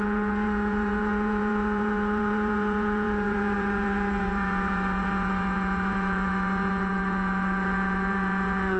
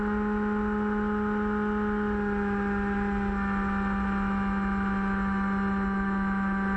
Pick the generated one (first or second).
first